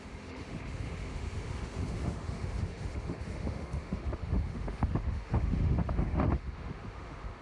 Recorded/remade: remade